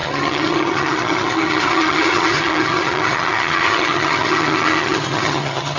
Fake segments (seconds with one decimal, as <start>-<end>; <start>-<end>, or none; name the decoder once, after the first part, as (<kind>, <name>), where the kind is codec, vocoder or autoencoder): 0.0-5.8 (vocoder, HiFi-GAN)